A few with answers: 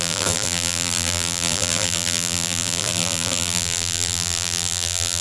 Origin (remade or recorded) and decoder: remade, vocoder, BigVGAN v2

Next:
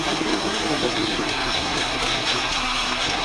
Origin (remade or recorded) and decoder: remade, codec, SNAC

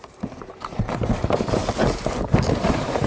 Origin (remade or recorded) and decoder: recorded